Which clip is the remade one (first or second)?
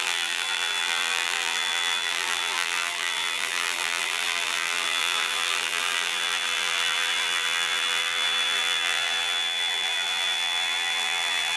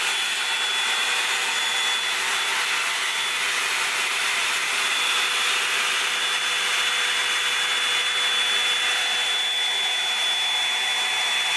first